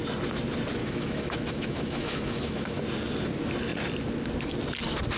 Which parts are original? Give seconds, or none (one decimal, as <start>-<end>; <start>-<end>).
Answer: 0.0-0.8; 2.8-5.2